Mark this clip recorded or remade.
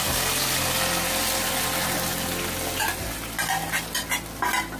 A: recorded